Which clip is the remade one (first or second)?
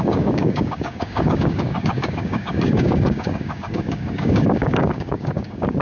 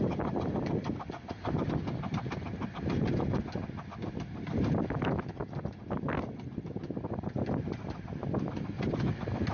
first